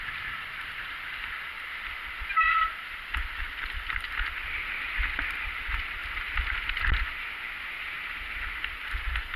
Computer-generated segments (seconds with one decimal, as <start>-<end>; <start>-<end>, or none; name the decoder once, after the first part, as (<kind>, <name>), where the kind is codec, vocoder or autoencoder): none